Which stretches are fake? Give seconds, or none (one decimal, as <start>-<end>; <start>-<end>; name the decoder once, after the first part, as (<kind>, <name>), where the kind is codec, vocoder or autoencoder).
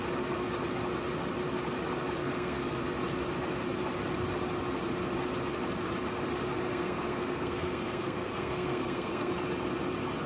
2.2-2.8 (codec, SNAC); 6.7-9.3